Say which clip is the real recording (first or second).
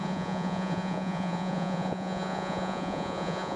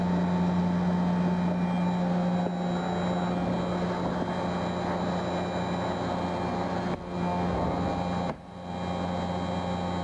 second